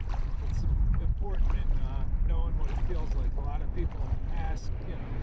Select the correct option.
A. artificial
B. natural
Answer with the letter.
A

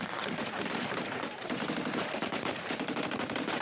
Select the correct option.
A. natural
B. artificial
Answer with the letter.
B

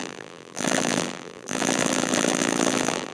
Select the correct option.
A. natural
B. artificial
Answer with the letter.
B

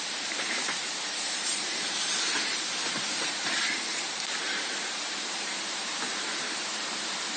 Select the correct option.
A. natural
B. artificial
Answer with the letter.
B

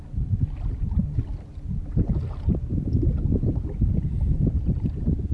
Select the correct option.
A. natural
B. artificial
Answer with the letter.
A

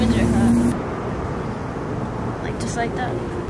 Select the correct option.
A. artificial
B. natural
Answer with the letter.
B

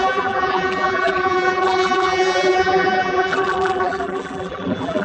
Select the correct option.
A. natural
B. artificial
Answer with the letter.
B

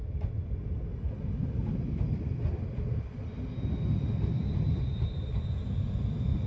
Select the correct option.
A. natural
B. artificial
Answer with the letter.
A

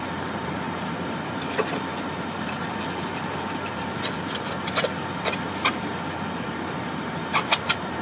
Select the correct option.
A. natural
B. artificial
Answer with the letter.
B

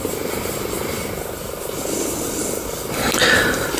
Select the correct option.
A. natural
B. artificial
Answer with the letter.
A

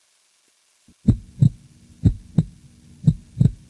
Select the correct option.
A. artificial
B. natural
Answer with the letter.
B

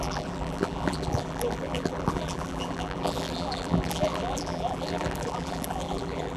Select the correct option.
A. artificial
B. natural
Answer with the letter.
A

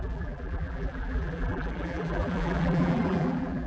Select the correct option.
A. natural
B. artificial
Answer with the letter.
B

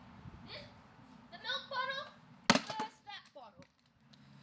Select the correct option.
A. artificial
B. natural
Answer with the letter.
B